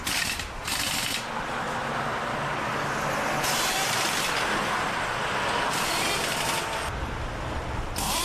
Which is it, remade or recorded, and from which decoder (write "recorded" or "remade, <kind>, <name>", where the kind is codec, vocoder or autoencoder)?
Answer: recorded